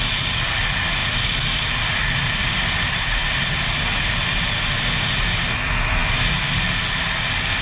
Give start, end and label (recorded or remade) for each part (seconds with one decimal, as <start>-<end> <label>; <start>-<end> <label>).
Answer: 0.0-7.6 recorded